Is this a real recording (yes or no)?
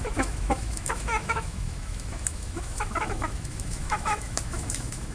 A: no